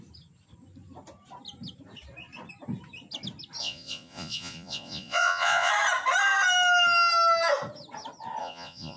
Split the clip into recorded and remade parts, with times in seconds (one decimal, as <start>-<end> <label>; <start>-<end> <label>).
0.0-3.6 recorded; 3.6-5.7 remade; 5.7-8.4 recorded; 8.4-9.0 remade